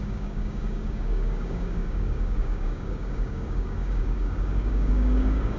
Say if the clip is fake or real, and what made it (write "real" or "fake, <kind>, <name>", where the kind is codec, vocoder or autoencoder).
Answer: fake, codec, DAC